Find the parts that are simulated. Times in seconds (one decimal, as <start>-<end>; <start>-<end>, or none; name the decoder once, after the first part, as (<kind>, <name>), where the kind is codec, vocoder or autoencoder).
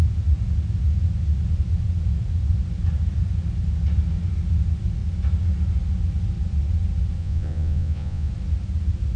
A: 7.2-8.3 (vocoder, Vocos)